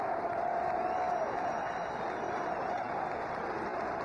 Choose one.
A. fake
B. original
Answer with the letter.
B